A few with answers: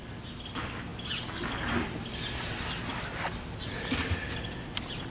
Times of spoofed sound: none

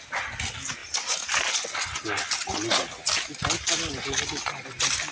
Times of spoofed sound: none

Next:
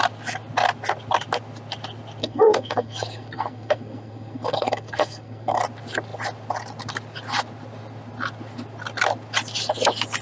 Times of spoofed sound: 2.2-5.6 (codec, SNAC)